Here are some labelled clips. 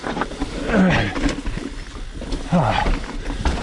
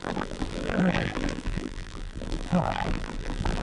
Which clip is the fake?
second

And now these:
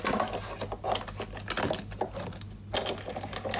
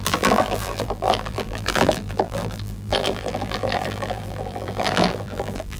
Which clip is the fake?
second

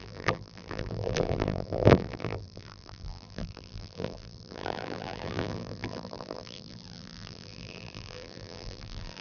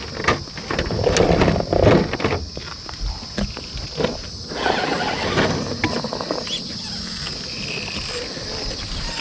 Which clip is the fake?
first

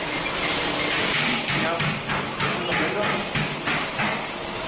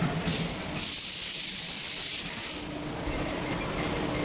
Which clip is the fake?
second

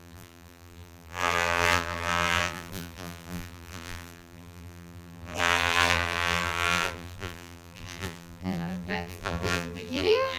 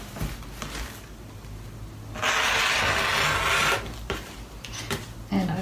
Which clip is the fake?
first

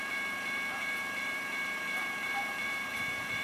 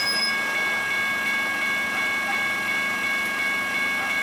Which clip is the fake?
first